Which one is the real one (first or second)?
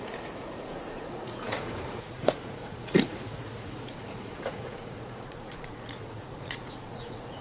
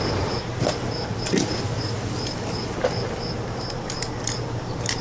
second